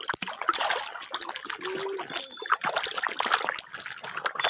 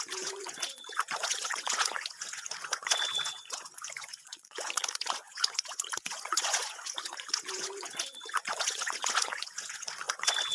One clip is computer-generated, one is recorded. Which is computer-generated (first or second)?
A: second